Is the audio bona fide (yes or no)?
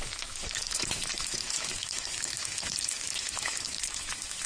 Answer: no